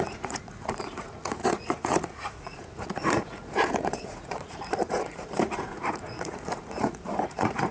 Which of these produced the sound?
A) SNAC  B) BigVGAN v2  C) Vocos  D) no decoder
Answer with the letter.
C